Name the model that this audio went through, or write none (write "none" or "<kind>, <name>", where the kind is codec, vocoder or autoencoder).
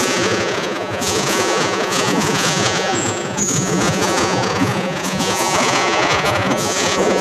vocoder, Vocos